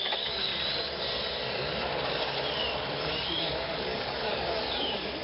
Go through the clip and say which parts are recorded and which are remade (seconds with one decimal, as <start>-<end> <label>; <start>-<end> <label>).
0.0-0.5 remade; 0.5-3.1 recorded; 3.1-5.2 remade